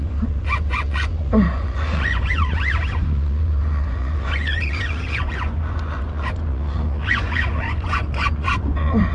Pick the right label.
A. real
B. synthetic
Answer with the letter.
B